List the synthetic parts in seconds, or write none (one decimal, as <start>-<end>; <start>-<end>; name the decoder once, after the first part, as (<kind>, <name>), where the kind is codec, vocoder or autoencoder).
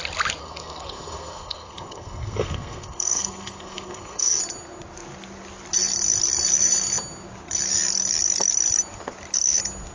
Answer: 0.4-4.4 (codec, SNAC)